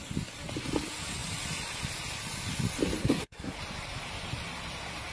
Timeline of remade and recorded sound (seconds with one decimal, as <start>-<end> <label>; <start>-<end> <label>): 0.0-3.0 recorded; 3.0-3.6 remade; 3.6-5.1 recorded